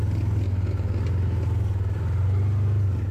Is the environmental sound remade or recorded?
recorded